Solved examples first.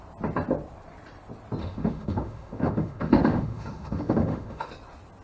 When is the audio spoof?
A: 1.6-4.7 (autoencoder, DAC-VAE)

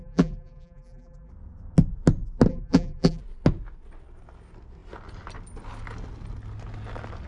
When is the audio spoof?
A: 0.0-1.3 (vocoder, BigVGAN v2); 2.5-3.2

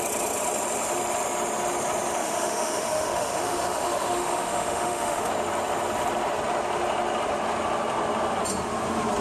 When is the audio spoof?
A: 2.2-5.3 (autoencoder, DAC-VAE)

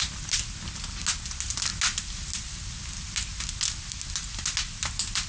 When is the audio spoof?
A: none

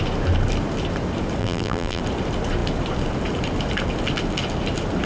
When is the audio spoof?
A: 1.4-2.0 (vocoder, BigVGAN v2)

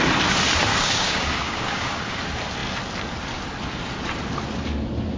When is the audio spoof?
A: 0.7-2.2 (codec, DAC)